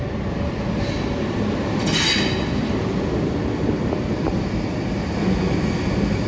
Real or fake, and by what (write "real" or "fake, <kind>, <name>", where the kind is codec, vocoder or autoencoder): real